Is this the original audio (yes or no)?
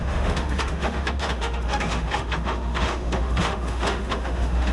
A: no